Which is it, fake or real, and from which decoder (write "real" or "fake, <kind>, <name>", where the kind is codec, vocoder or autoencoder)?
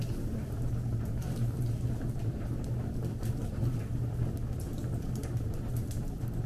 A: fake, vocoder, BigVGAN v2